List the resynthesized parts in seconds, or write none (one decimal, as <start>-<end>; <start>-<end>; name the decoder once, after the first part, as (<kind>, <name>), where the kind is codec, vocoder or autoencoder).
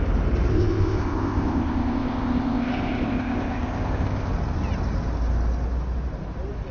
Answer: 0.5-4.3 (codec, ZipCodec)